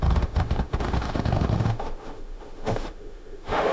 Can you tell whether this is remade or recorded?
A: remade